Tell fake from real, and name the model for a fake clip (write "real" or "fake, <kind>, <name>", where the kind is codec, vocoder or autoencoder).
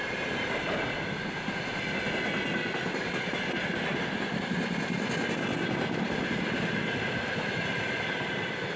real